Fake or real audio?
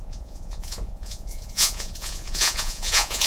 fake